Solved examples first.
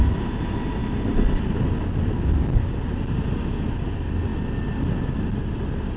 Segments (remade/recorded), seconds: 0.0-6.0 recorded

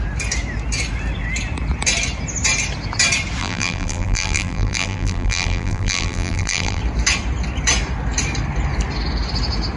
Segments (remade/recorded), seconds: 0.0-3.4 recorded; 3.4-6.8 remade; 6.8-9.8 recorded

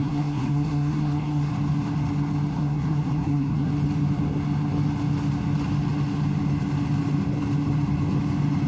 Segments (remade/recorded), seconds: 0.0-1.5 remade; 1.5-2.5 recorded; 2.5-3.7 remade; 3.7-8.7 recorded